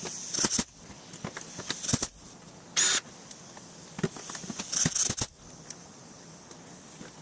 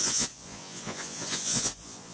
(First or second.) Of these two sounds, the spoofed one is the second